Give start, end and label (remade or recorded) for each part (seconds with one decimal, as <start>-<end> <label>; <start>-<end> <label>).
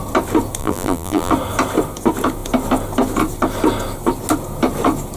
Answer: 0.0-0.6 recorded; 0.6-1.3 remade; 1.3-5.2 recorded